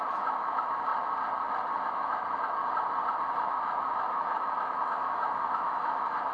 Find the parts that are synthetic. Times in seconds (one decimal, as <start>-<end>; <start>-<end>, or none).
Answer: 0.0-0.9; 1.9-2.6; 3.4-6.3